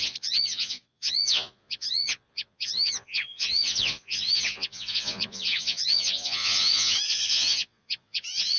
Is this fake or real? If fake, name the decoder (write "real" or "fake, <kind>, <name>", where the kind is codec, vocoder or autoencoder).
fake, vocoder, Vocos